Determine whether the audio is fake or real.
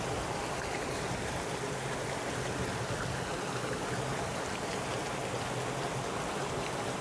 real